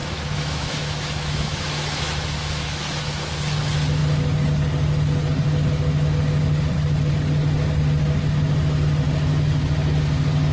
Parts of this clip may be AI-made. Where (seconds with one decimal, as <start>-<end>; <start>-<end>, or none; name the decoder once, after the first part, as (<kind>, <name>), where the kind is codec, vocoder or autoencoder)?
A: 0.0-3.3 (autoencoder, DAC-VAE)